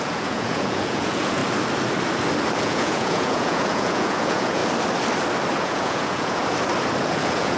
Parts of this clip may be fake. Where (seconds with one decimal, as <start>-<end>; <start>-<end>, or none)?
0.0-1.4; 2.6-4.6; 5.6-6.4; 7.0-7.6